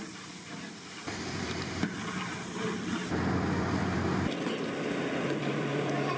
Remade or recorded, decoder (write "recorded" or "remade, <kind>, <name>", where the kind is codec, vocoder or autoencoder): remade, vocoder, BigVGAN v2